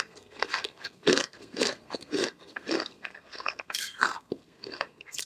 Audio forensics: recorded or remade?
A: remade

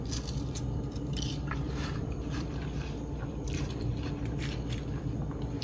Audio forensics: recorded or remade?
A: remade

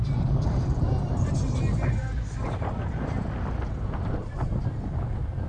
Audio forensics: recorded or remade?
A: recorded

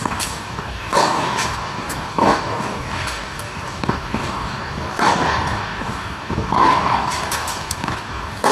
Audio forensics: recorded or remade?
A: remade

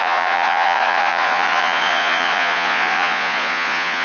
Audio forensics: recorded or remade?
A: remade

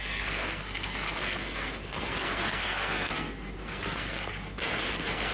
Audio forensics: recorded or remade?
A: remade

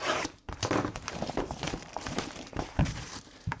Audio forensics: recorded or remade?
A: remade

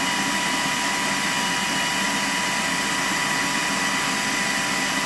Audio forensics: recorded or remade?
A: recorded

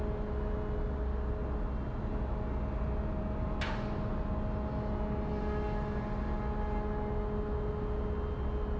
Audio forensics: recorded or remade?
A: recorded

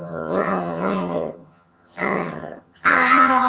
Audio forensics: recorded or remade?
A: remade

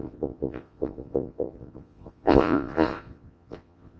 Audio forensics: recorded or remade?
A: remade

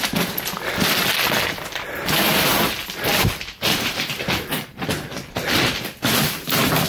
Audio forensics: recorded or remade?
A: recorded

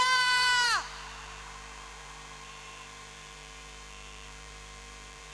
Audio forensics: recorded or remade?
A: remade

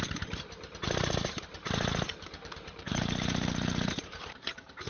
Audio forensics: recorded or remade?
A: remade